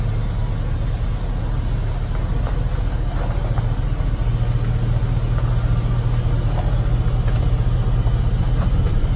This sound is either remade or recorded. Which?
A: recorded